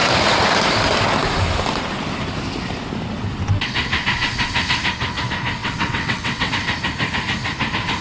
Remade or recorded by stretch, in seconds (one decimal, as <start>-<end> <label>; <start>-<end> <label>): 0.0-5.6 recorded; 5.6-6.5 remade; 6.5-8.0 recorded